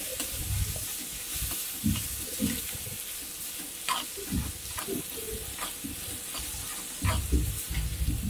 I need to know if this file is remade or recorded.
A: recorded